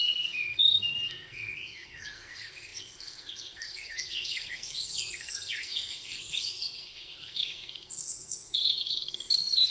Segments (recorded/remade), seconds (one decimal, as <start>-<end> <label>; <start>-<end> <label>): 0.0-9.7 remade